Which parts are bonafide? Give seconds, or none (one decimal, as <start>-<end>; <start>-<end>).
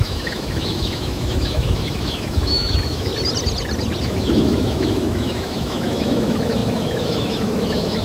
3.1-4.0